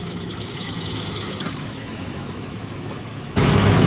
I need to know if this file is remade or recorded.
remade